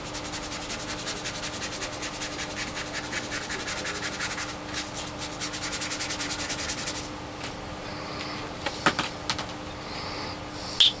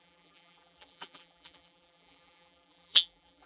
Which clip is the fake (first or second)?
second